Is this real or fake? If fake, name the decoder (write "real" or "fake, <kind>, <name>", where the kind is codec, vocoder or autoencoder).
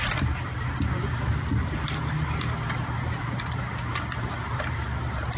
real